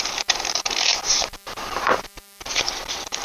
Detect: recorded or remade remade